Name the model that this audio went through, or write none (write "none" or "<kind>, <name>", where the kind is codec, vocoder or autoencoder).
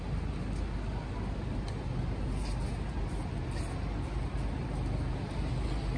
none